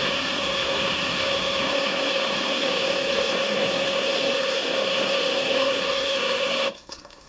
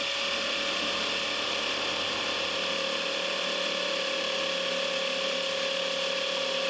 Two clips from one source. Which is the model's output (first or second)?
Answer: first